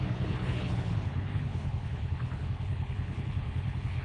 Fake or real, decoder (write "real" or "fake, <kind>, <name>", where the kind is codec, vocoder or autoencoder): fake, codec, HILCodec